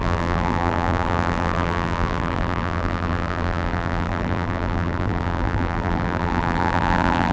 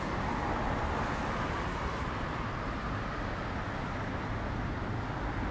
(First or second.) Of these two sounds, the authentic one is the second